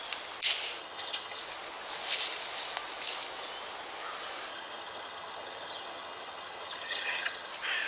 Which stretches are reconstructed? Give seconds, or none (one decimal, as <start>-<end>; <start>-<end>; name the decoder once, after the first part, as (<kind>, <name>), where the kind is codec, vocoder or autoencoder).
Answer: 0.8-1.4 (vocoder, HiFi-GAN); 4.5-7.5